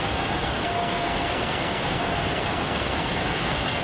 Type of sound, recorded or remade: remade